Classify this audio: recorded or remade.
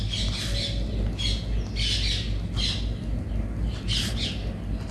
recorded